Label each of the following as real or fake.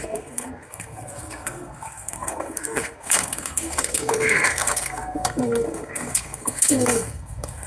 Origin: fake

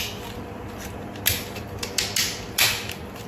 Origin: real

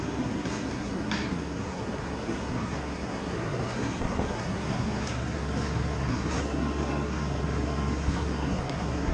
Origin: fake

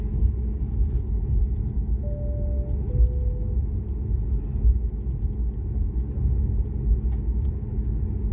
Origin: real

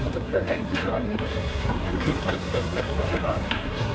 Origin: fake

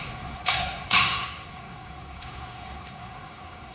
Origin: fake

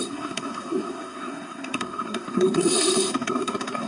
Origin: fake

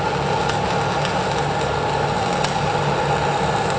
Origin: real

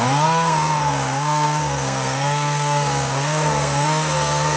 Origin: fake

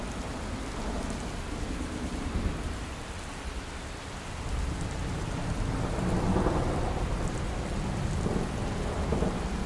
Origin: real